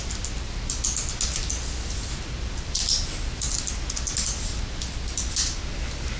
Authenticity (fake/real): real